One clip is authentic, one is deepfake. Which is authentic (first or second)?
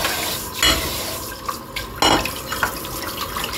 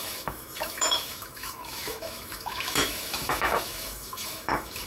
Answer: first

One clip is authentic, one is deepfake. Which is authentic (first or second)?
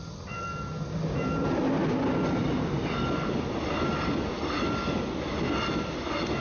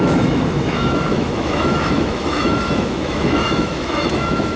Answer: first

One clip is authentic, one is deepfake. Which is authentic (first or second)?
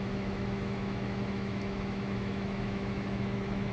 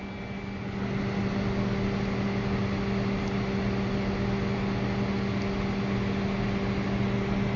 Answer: second